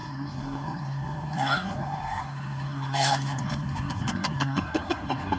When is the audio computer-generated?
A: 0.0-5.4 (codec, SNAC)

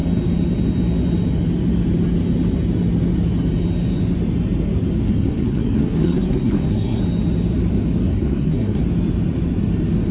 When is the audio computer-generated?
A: 5.0-7.0 (codec, SNAC); 8.0-8.8

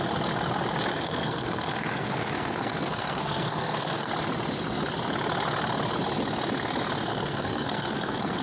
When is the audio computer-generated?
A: 0.9-4.1 (codec, SNAC); 7.1-8.4

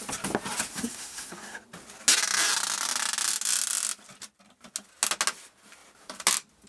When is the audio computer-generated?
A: 0.7-1.6 (codec, SNAC)

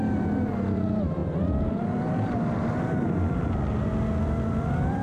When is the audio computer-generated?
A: none

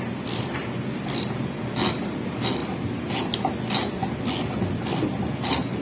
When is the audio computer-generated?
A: none

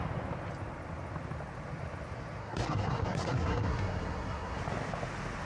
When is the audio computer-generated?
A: 2.4-4.6 (codec, SNAC)

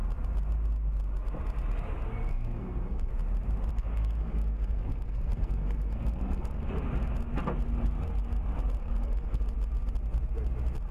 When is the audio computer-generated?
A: 2.3-3.1 (codec, SNAC); 3.7-6.7; 8.8-9.4